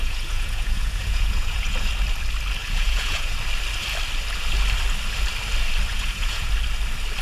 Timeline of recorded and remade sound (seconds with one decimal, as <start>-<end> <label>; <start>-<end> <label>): 0.0-1.9 remade; 1.9-2.6 recorded; 2.6-3.3 remade; 3.3-5.9 recorded; 5.9-6.5 remade; 6.5-7.2 recorded